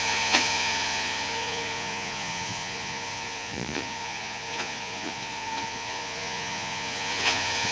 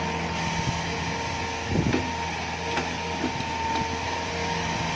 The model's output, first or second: first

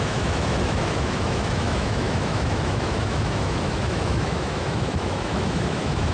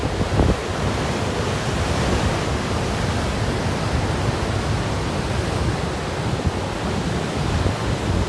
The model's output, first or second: first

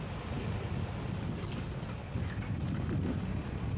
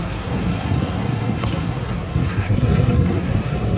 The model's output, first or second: second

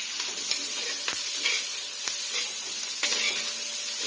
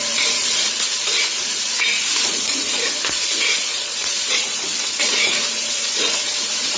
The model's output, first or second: second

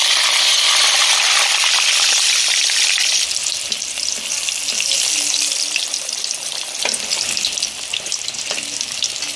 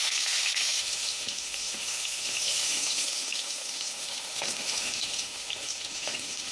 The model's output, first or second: second